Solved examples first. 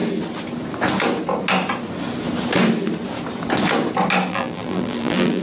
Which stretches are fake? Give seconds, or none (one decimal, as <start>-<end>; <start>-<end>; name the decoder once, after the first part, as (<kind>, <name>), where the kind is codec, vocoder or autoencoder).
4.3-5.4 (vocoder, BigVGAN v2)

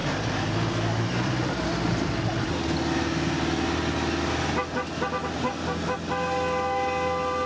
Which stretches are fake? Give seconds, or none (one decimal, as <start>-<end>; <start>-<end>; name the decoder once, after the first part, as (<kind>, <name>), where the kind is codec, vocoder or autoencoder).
0.0-1.7 (vocoder, BigVGAN v2)

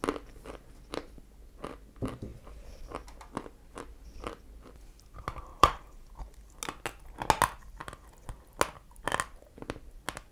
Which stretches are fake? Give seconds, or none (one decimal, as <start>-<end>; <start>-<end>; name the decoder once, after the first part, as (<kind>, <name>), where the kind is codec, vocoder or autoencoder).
5.5-6.1 (vocoder, BigVGAN v2)